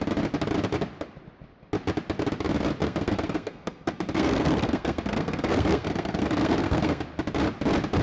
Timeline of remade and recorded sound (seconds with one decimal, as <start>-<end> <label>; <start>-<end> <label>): 0.0-2.8 recorded; 2.8-7.0 remade; 7.0-8.0 recorded